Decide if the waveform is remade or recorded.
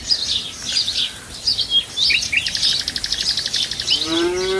recorded